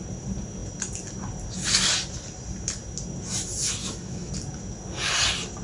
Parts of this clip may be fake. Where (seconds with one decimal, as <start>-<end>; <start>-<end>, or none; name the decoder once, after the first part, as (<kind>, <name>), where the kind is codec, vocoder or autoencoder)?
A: 3.8-4.3 (autoencoder, DAC-VAE)